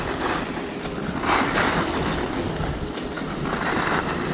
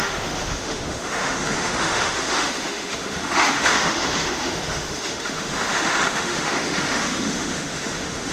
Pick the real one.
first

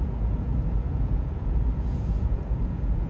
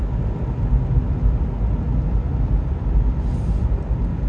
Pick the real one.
second